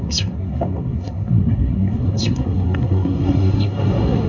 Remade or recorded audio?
remade